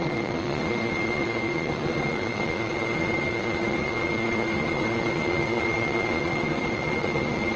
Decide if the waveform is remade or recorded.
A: remade